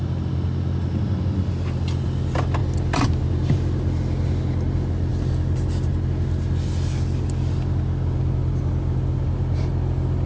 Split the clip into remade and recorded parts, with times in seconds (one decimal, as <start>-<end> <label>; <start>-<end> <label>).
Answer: 0.0-10.3 recorded